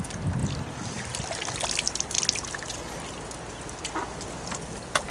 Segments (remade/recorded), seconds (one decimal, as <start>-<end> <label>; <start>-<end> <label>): 0.0-5.1 recorded